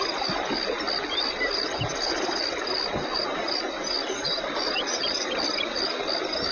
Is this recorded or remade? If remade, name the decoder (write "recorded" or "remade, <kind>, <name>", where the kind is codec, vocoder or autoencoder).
recorded